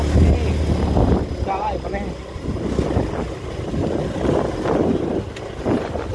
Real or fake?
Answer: real